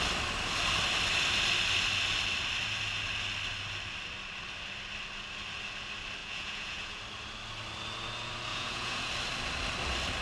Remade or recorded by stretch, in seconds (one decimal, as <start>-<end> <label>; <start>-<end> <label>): 0.0-6.2 recorded; 6.2-7.0 remade; 7.0-8.5 recorded; 8.5-9.1 remade; 9.1-10.2 recorded